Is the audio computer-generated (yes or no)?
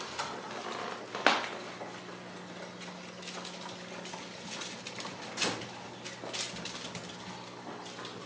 no